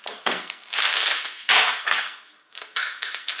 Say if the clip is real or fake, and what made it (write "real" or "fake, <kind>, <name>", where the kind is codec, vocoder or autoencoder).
fake, codec, SNAC